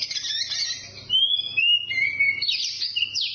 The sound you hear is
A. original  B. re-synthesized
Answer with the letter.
A